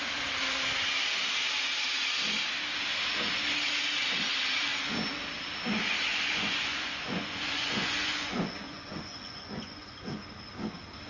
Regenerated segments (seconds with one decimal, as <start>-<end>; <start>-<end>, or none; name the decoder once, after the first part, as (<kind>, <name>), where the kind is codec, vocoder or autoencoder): 6.1-10.1 (vocoder, Vocos)